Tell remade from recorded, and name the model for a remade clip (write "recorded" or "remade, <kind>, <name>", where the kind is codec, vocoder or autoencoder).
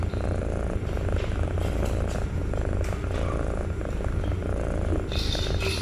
recorded